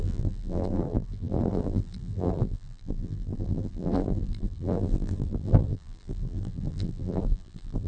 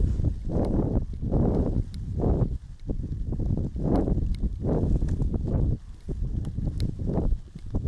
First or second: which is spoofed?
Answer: first